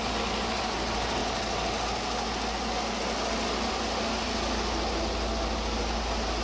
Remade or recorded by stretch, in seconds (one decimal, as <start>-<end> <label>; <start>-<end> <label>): 0.0-6.4 recorded